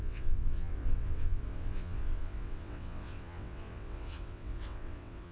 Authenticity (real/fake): fake